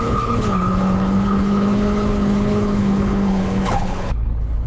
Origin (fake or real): fake